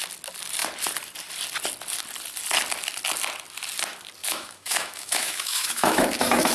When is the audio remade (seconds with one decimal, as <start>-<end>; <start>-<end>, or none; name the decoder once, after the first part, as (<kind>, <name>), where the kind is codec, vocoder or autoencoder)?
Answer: 4.2-6.5 (autoencoder, DAC-VAE)